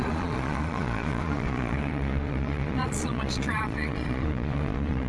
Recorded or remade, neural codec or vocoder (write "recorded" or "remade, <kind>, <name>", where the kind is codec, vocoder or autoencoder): remade, vocoder, Vocos